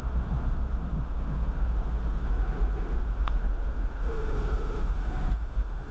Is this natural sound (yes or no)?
no